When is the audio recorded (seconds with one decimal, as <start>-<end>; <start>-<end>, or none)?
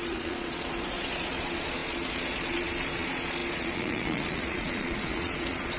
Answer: none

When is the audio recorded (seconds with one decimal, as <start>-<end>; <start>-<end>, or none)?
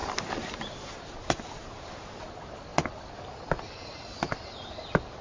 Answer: 2.2-5.2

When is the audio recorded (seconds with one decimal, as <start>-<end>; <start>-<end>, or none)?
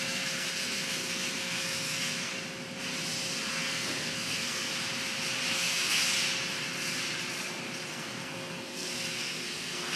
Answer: 2.3-3.5; 4.7-5.5; 6.0-7.9